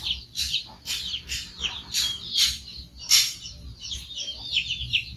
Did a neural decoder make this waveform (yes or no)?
no